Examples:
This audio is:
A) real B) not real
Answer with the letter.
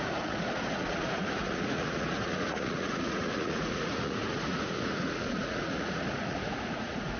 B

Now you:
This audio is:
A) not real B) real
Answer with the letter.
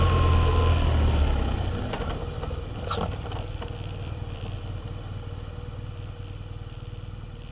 B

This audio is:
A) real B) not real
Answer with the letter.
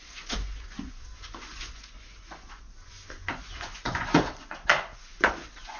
B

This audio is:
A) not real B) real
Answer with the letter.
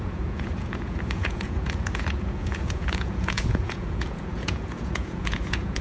A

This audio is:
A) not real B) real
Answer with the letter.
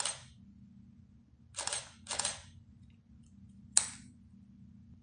B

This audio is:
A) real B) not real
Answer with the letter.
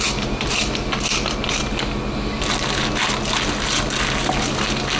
A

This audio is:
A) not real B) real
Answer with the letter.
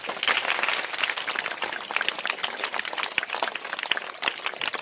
B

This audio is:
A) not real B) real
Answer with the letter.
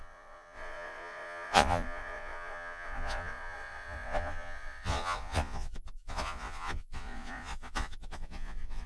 A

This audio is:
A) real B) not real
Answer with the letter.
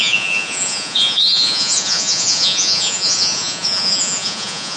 B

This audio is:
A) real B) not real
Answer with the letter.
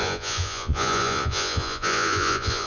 B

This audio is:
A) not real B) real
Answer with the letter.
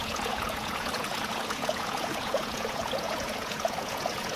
A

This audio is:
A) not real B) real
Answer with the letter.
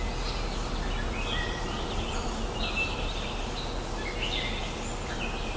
B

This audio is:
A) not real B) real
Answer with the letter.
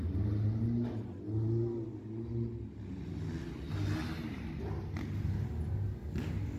B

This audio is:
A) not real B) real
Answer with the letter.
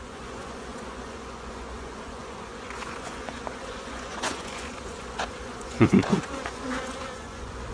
A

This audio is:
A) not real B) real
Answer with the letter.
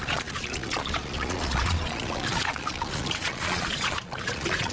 A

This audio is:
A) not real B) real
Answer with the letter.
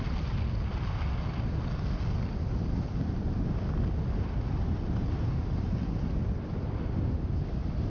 B